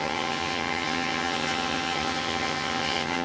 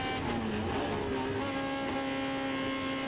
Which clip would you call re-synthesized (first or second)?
first